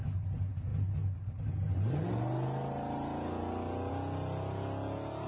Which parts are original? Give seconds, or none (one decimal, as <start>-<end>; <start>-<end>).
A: 0.0-5.3

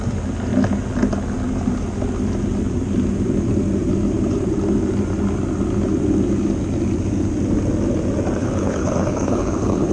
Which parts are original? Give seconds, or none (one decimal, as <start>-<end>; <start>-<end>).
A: 0.0-8.4

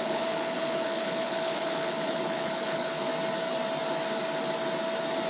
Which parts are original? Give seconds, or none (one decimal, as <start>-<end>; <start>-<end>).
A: 3.1-5.3

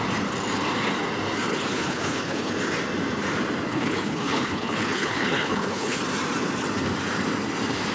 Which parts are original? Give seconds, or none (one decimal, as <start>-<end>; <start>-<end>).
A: 0.0-1.5; 2.5-3.7; 6.0-7.9

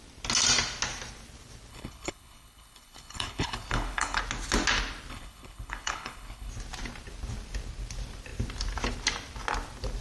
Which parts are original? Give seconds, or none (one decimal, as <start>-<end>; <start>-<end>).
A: 0.0-1.7; 4.2-5.1; 6.5-10.0

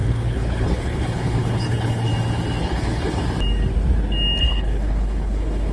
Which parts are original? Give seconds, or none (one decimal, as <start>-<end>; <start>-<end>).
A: 2.1-2.6; 3.2-4.4